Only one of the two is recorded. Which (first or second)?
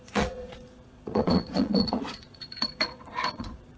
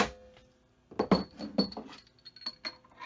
second